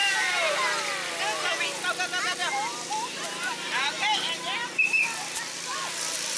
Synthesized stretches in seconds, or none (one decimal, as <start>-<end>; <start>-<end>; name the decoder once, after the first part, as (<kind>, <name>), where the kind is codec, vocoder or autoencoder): 0.0-0.8 (vocoder, BigVGAN v2); 2.4-5.4